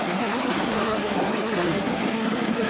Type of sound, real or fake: fake